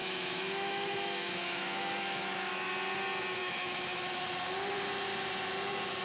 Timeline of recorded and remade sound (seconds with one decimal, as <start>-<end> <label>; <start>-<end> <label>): 0.0-2.7 remade; 2.7-3.4 recorded; 3.4-4.2 remade; 4.2-6.0 recorded